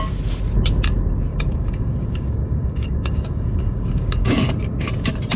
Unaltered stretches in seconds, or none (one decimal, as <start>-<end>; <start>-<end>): 0.0-1.3; 4.5-5.4